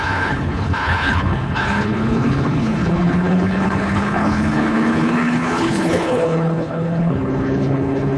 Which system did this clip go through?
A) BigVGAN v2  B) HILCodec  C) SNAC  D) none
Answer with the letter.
B